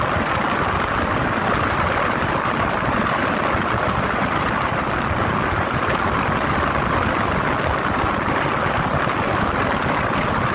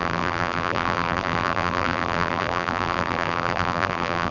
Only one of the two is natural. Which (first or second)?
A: first